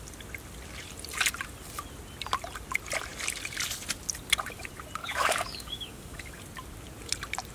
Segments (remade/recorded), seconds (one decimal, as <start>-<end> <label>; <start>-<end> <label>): 0.0-5.0 recorded; 5.0-6.4 remade; 6.4-7.5 recorded